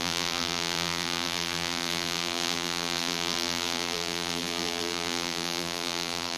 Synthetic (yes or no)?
yes